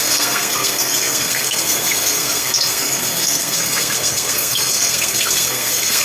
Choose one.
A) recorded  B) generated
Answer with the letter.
B